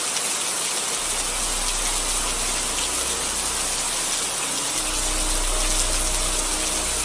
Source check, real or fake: real